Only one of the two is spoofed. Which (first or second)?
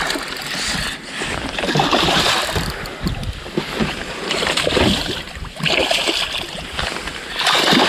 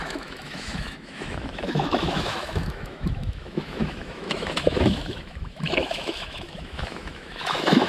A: second